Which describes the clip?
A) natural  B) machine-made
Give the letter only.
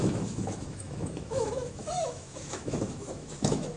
B